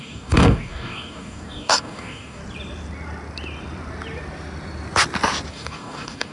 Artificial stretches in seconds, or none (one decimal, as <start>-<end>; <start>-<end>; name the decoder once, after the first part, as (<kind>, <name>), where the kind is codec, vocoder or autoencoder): 0.0-2.4 (codec, DAC); 5.5-6.3